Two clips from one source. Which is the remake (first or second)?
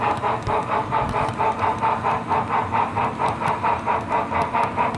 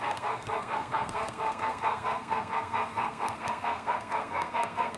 second